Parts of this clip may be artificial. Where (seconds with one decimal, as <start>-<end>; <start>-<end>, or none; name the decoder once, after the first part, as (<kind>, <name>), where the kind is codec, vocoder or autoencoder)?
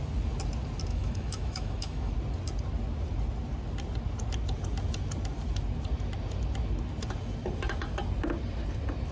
0.9-2.1 (autoencoder, DAC-VAE)